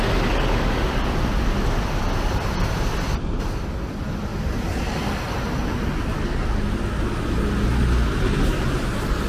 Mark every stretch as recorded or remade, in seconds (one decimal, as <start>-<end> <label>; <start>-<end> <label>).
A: 0.0-9.3 recorded